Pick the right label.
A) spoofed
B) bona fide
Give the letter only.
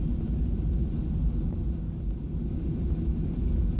B